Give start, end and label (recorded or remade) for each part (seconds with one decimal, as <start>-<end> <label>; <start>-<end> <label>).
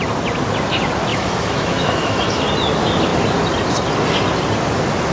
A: 0.0-1.1 recorded; 1.1-2.4 remade; 2.4-5.1 recorded